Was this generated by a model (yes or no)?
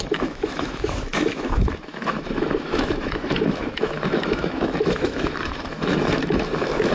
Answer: yes